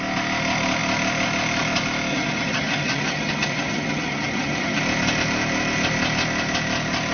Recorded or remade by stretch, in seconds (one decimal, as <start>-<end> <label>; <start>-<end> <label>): 0.0-2.1 recorded; 2.1-4.8 remade; 4.8-7.1 recorded